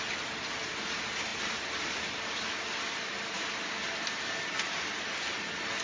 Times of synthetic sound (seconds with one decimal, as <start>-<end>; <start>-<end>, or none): 1.3-4.3